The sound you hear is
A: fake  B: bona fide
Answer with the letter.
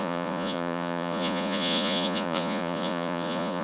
A